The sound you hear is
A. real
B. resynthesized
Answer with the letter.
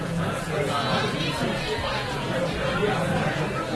B